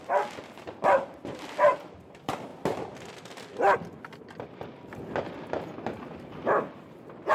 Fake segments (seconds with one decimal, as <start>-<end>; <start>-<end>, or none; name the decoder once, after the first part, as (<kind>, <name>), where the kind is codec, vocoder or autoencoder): none